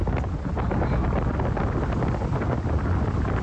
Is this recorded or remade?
recorded